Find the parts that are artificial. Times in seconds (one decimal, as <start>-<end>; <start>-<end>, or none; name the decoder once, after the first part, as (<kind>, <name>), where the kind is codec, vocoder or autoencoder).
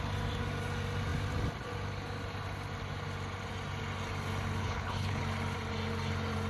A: 4.6-5.2 (codec, HILCodec)